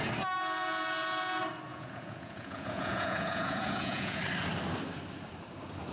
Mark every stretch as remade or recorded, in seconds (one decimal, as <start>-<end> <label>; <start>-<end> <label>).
0.0-1.7 recorded; 1.7-4.2 remade; 4.2-5.9 recorded